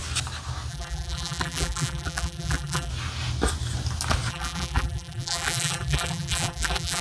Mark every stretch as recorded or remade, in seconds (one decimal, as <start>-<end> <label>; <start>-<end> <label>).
0.0-0.7 recorded; 0.7-2.9 remade; 2.9-4.3 recorded; 4.3-7.0 remade